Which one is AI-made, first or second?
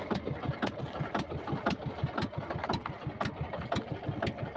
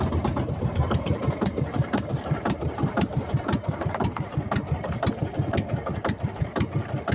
second